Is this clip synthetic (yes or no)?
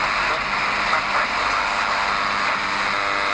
no